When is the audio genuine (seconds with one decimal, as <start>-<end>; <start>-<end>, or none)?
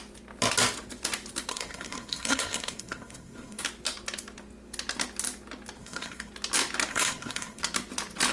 0.0-1.5; 3.6-5.8; 6.3-6.9; 7.6-8.3